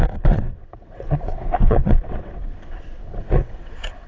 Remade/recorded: remade